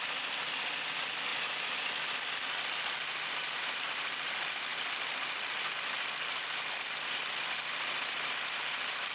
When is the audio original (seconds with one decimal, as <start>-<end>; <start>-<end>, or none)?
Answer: 0.0-9.1